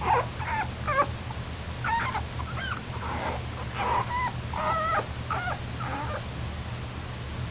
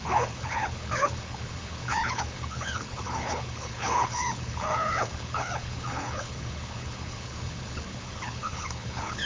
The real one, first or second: first